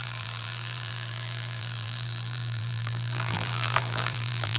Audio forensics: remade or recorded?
remade